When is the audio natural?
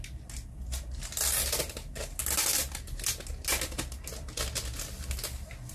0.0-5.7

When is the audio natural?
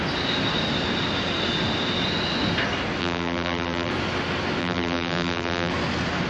0.0-3.0; 3.9-4.6; 5.7-6.3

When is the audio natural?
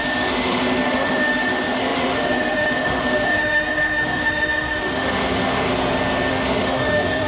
5.7-6.3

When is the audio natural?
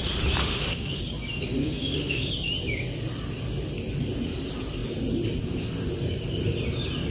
0.0-0.4; 1.0-1.6; 2.3-7.1